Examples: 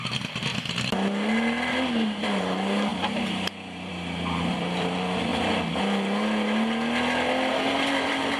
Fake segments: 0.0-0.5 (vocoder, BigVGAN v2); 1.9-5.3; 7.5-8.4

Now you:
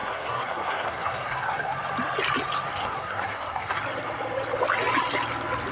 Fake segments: 0.0-1.7 (codec, SNAC); 2.8-3.8

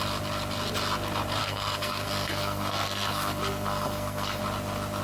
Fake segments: 1.4-4.4 (codec, SNAC)